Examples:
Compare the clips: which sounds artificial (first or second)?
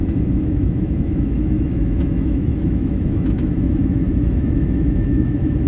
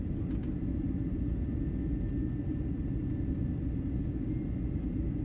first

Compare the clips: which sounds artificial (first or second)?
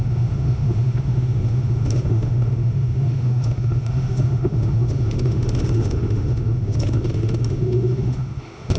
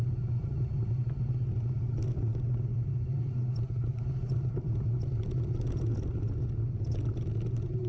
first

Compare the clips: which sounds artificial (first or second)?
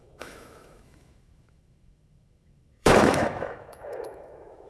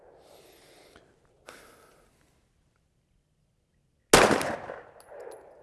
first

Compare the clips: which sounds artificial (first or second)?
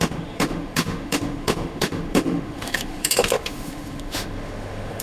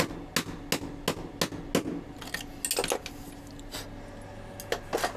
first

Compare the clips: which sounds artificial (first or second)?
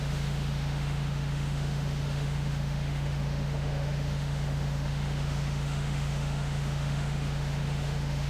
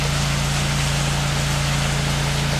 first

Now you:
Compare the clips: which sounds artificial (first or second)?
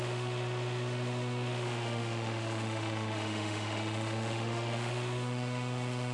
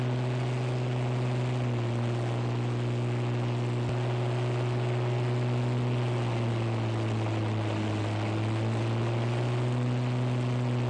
first